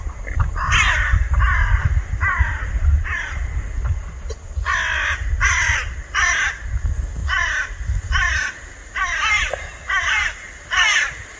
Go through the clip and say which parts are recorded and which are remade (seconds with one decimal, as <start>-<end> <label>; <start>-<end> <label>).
0.0-11.4 recorded